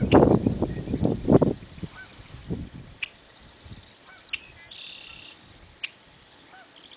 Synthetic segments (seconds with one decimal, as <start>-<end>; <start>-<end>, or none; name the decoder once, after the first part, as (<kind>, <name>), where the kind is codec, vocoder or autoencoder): none